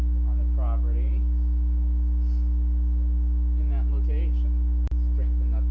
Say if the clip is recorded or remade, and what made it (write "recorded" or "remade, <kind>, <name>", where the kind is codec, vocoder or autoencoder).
recorded